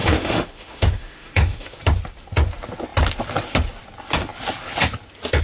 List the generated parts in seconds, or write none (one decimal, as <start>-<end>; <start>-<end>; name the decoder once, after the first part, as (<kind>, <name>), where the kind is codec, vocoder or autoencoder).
0.0-1.8 (autoencoder, DAC-VAE)